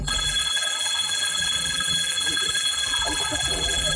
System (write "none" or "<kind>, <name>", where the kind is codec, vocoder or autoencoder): vocoder, BigVGAN v2